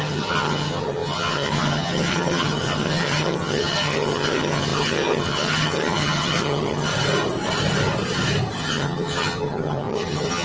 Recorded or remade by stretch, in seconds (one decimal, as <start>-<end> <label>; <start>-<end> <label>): 0.0-6.9 remade; 6.9-8.6 recorded; 8.6-10.4 remade